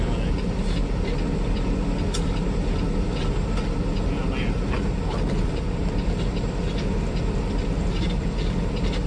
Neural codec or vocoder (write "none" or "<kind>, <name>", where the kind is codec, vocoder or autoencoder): none